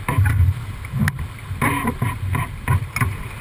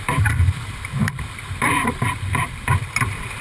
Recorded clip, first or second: first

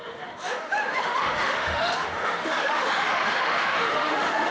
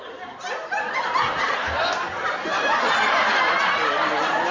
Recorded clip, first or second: second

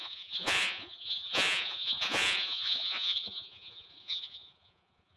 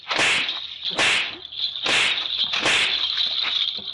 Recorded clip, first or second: second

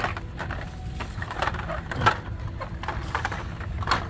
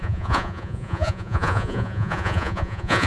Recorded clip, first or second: first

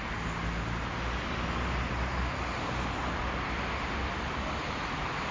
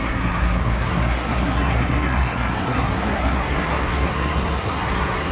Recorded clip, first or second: first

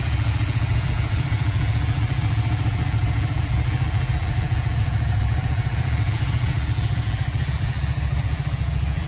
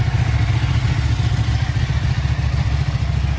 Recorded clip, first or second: second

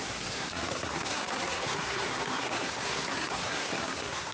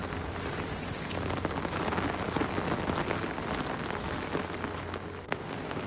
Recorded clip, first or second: second